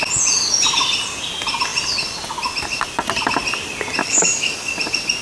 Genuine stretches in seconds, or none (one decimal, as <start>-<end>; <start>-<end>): 0.0-4.0; 4.7-5.2